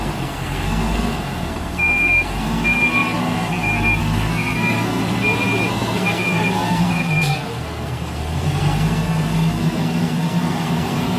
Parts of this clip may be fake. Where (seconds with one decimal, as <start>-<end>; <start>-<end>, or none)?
0.0-5.0; 5.7-11.2